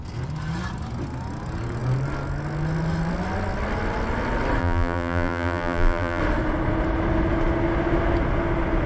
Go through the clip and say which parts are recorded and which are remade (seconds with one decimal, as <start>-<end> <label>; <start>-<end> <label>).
0.0-4.6 recorded; 4.6-6.2 remade; 6.2-8.9 recorded